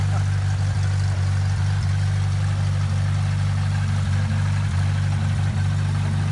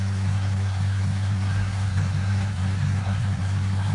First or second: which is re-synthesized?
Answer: second